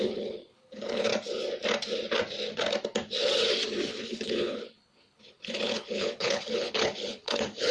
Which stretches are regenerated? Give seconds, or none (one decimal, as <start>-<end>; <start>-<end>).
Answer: 0.0-1.1; 3.9-7.7